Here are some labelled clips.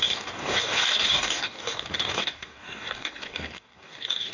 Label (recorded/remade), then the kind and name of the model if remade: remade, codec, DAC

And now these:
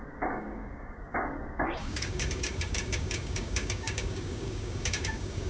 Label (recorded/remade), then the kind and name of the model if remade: remade, codec, DAC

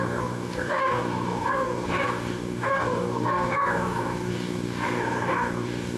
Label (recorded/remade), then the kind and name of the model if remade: remade, codec, DAC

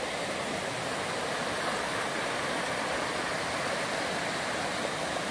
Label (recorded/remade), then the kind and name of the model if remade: recorded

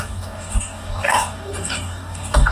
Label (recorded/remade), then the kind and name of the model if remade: remade, codec, DAC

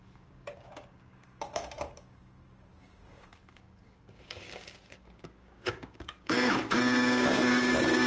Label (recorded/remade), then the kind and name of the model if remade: remade, codec, DAC